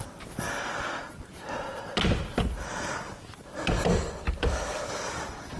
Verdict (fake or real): real